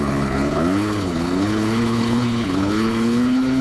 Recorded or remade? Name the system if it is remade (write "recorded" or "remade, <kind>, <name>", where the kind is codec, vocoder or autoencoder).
remade, codec, HILCodec